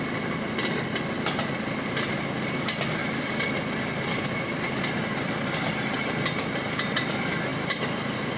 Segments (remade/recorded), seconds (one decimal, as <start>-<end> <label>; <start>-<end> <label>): 0.0-3.0 recorded; 3.0-3.6 remade; 3.6-7.5 recorded; 7.5-8.4 remade